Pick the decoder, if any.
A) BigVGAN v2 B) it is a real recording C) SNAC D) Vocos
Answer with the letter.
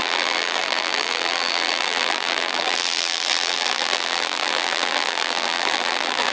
A